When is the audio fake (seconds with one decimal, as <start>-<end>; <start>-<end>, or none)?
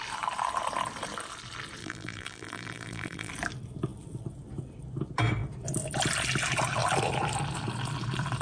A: 1.8-3.3